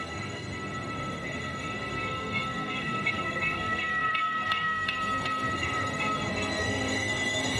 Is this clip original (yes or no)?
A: no